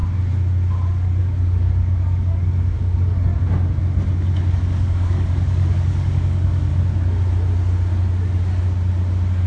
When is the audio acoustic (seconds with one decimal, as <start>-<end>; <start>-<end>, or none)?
0.0-1.2; 3.3-4.5; 6.7-9.5